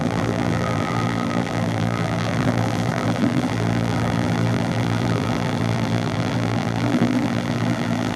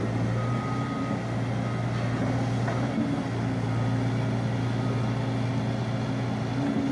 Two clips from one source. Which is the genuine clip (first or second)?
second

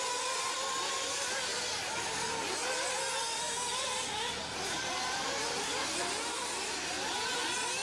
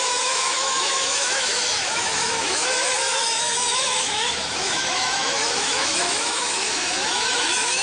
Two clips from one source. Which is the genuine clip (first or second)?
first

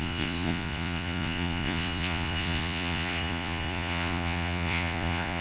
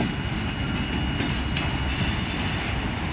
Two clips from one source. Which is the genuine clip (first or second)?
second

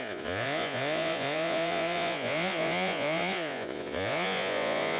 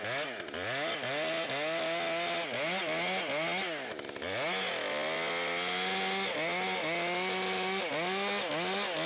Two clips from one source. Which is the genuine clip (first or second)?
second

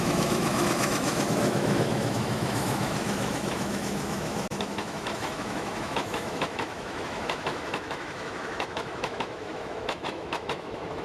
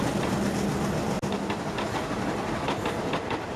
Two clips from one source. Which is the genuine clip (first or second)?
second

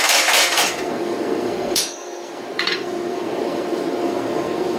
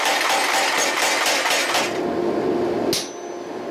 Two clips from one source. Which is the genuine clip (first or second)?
second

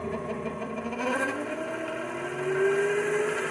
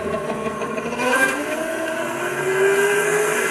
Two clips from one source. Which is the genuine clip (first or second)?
first